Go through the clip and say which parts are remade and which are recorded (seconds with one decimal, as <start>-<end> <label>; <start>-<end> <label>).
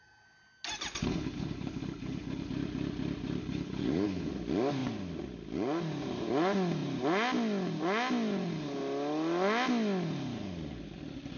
0.0-1.0 recorded; 1.0-2.5 remade; 2.5-3.4 recorded; 3.4-4.3 remade; 4.3-11.4 recorded